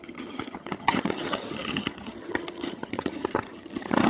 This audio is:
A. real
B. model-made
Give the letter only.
B